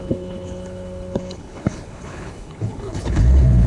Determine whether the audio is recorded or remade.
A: remade